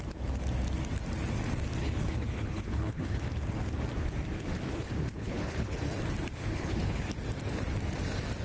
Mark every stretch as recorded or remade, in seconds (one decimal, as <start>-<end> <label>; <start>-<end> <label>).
0.0-1.8 recorded; 1.8-3.2 remade; 3.2-4.7 recorded; 4.7-5.8 remade; 5.8-6.3 recorded; 6.3-7.1 remade; 7.1-8.4 recorded